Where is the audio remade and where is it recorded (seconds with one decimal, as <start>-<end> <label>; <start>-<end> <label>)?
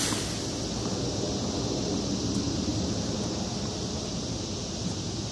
0.0-2.7 recorded; 2.7-4.1 remade; 4.1-4.6 recorded; 4.6-5.3 remade